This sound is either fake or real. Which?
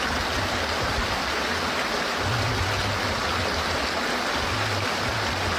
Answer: real